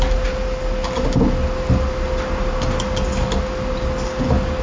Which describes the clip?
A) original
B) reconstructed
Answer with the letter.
A